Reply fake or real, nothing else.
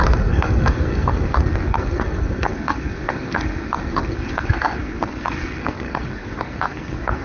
fake